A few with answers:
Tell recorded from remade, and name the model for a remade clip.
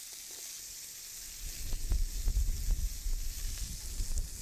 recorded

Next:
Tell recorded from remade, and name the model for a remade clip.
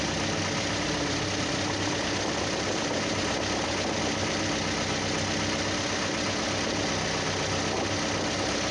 recorded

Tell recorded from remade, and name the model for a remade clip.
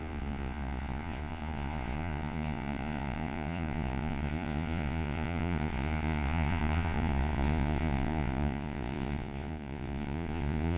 remade, vocoder, Vocos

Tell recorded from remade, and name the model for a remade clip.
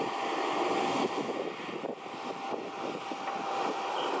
recorded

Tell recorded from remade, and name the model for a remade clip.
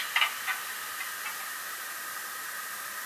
recorded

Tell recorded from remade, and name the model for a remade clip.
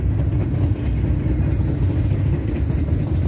recorded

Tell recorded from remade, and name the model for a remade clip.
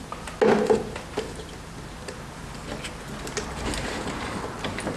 recorded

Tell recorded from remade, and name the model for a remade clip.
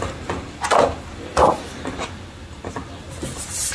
recorded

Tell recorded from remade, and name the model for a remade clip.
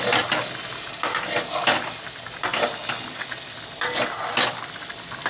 recorded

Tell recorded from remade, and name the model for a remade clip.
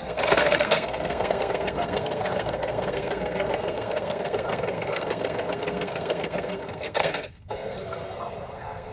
remade, codec, SNAC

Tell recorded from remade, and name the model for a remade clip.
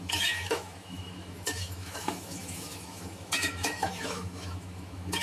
remade, autoencoder, DAC-VAE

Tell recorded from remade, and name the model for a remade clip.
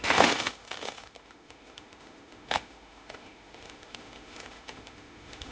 remade, autoencoder, DAC-VAE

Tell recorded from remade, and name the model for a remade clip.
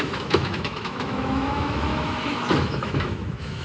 remade, autoencoder, DAC-VAE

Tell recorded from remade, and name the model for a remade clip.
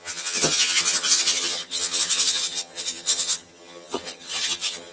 remade, vocoder, HiFi-GAN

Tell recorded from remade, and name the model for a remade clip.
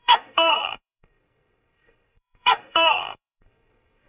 remade, codec, SNAC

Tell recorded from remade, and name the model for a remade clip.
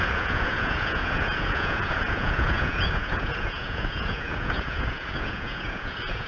remade, vocoder, Vocos